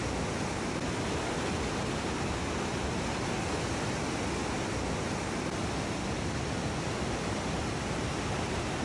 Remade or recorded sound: recorded